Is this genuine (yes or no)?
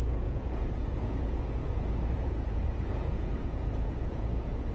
no